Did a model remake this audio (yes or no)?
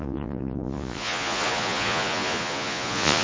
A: yes